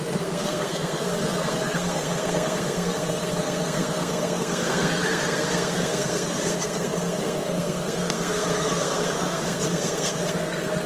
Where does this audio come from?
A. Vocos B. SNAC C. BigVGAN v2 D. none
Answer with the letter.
B